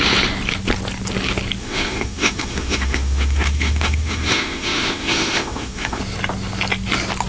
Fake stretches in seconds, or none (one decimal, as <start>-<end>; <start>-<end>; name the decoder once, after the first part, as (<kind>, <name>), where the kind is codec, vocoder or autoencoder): 1.6-6.0 (autoencoder, DAC-VAE)

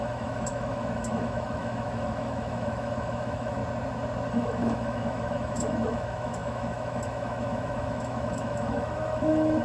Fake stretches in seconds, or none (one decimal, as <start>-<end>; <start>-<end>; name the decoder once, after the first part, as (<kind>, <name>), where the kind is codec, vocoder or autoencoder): 0.0-3.6 (autoencoder, DAC-VAE); 4.3-9.6

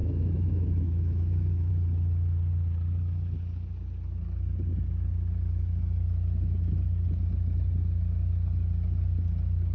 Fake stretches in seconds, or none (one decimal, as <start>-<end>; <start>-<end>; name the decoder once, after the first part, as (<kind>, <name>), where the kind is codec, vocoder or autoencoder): 0.0-1.7 (autoencoder, DAC-VAE)

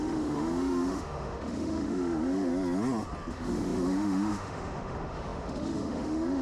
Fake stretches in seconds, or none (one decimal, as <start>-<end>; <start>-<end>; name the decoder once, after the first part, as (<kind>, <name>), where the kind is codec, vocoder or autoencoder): 0.0-2.5 (autoencoder, DAC-VAE); 3.3-6.4